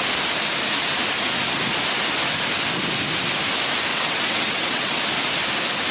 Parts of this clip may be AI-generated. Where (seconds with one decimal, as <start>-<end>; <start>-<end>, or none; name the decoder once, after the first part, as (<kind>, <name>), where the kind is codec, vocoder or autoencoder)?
3.9-5.0 (vocoder, WaveNeXt)

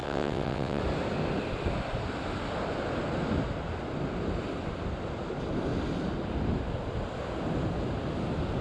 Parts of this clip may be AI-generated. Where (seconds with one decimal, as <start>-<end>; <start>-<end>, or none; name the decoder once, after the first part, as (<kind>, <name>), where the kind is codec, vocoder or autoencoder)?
0.0-0.8 (vocoder, WaveNeXt)

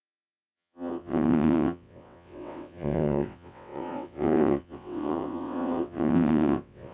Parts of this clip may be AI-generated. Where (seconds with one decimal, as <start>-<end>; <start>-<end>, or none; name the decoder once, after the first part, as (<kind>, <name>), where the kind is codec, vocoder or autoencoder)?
0.0-6.9 (vocoder, WaveNeXt)

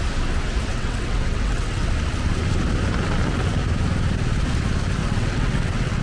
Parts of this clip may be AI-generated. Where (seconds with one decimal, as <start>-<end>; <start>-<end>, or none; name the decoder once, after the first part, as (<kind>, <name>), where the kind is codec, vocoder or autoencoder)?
0.7-1.9 (vocoder, WaveNeXt); 5.0-6.0

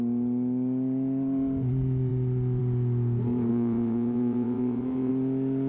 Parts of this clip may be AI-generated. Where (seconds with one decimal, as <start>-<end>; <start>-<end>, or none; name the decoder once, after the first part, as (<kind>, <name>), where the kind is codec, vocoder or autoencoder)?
3.5-5.1 (vocoder, WaveNeXt)